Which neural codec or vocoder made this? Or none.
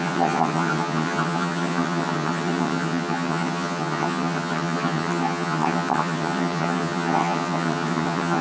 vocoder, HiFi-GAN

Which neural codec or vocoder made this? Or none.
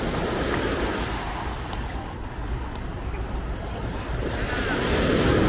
none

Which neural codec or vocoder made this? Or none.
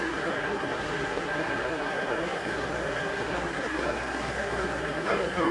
codec, SNAC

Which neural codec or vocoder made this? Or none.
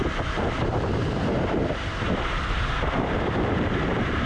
vocoder, BigVGAN v2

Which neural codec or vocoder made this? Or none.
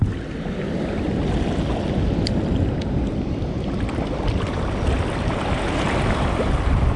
none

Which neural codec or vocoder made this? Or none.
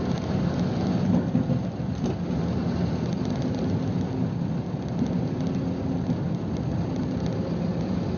none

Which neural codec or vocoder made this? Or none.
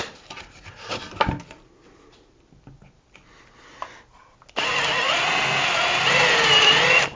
none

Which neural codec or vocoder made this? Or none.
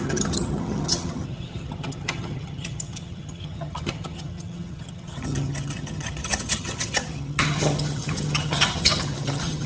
vocoder, HiFi-GAN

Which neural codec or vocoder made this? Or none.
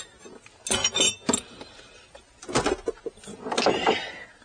none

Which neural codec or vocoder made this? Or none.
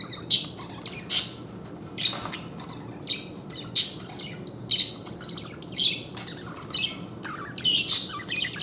none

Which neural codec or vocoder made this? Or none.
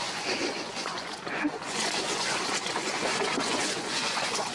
vocoder, Vocos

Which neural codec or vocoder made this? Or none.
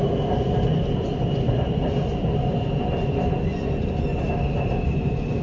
none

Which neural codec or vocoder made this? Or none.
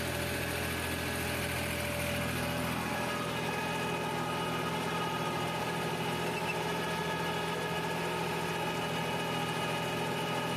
none